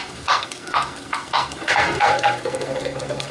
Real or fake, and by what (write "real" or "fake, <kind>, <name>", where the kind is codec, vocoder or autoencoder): fake, codec, SNAC